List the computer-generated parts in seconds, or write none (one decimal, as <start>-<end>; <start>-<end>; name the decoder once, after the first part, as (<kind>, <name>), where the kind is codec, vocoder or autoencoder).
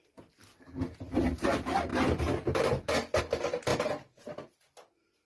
3.7-4.3 (vocoder, Vocos)